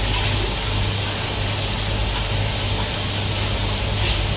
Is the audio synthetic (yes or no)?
no